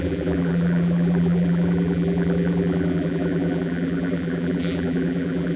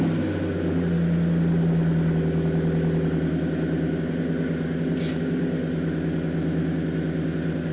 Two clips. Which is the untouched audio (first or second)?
second